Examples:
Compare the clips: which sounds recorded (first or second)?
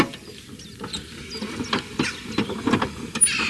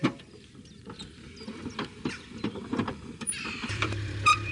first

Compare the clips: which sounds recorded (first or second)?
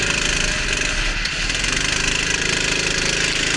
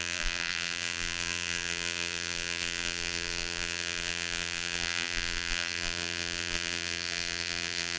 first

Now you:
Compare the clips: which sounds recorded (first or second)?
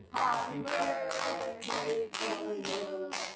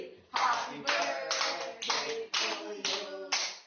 second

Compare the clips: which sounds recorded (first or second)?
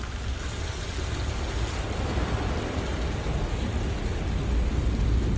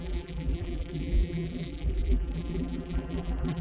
first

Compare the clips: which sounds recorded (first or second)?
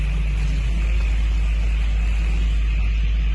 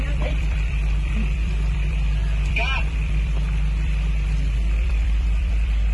first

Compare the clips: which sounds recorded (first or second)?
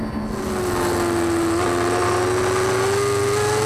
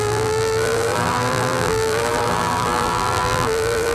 first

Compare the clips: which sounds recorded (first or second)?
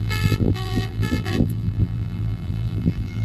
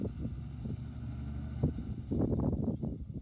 second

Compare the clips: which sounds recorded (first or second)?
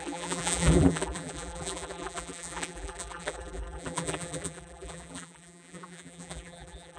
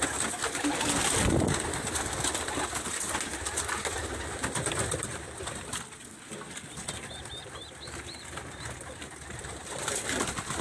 second